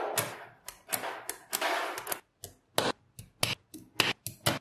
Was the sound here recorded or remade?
recorded